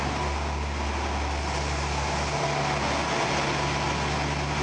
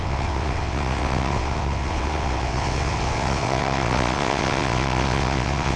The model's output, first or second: second